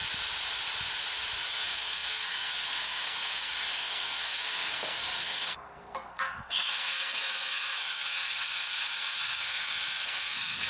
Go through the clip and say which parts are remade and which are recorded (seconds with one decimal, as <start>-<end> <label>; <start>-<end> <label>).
0.0-1.5 recorded; 1.5-10.7 remade